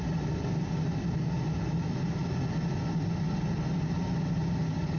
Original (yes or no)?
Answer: yes